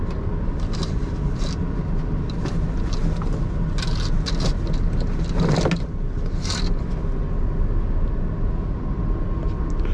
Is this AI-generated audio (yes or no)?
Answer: no